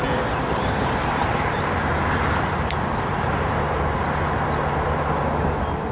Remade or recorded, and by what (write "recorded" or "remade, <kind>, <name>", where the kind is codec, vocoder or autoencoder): recorded